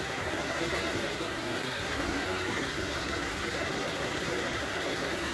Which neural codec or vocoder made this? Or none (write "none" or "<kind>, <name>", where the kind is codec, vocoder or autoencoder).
codec, SNAC